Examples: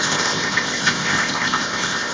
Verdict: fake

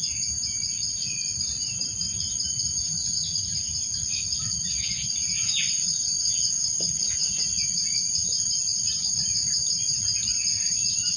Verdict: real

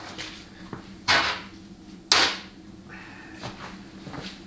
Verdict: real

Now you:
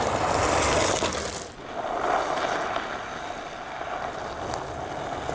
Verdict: real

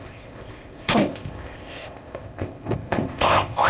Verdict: fake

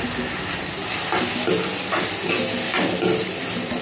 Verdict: real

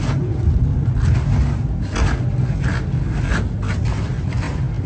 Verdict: real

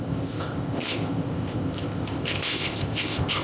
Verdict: fake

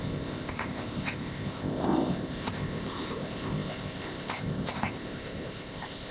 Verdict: fake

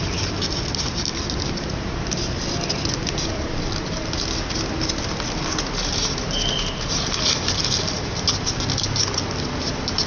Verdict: real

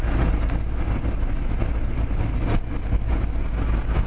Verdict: real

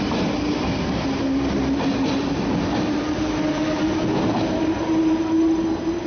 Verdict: real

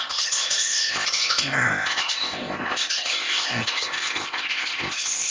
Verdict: fake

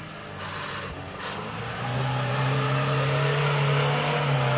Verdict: real